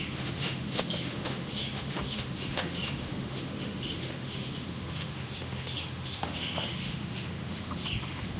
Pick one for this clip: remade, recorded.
remade